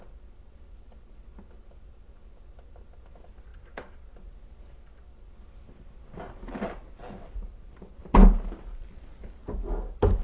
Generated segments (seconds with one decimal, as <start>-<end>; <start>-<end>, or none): 3.5-4.2; 7.0-7.5; 8.0-9.4